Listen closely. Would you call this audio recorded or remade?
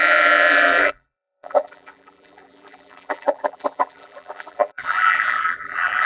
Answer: remade